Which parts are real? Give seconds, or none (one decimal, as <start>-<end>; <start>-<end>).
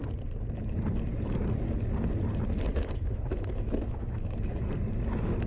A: 0.0-2.7; 4.6-5.5